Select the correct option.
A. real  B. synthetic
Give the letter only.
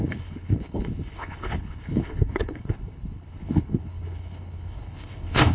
B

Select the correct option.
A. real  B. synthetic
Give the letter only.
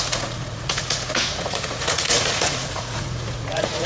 B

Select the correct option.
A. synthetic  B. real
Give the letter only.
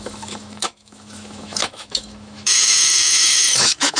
A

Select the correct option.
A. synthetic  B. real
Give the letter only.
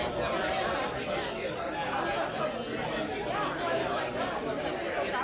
B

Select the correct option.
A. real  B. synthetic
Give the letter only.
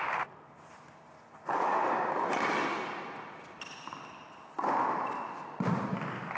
A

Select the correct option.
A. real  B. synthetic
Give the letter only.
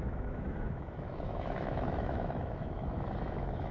B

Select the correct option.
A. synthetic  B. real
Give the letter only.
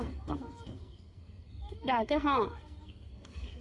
A